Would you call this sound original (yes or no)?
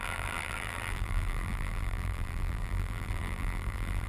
no